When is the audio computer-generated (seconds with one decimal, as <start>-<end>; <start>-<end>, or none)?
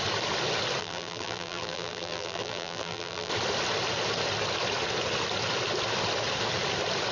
0.8-3.3